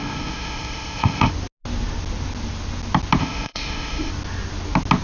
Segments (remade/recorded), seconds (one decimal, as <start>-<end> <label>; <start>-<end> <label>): 0.0-1.3 remade; 1.3-3.2 recorded; 3.2-4.1 remade; 4.1-5.0 recorded